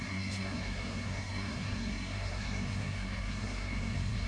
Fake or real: fake